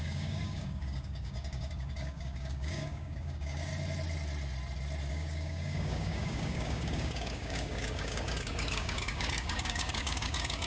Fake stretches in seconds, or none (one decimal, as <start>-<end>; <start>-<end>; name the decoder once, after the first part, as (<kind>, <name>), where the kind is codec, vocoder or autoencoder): 0.0-3.7 (codec, DAC); 5.1-10.7